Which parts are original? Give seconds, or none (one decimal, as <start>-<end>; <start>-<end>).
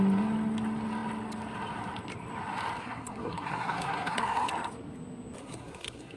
0.0-2.8; 4.5-5.4